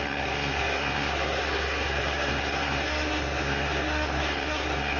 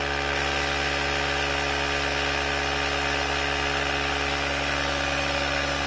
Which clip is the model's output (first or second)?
first